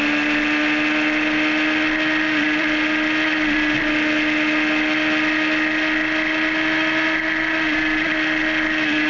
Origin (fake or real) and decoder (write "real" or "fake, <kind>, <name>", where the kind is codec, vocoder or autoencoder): real